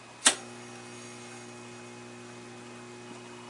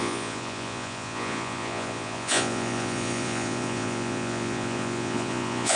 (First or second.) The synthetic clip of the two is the second